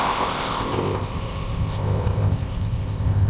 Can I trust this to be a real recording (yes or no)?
no